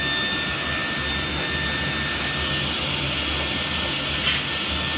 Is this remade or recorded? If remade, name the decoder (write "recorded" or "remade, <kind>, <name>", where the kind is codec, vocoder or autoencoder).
recorded